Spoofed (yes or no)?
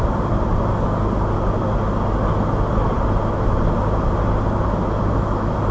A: no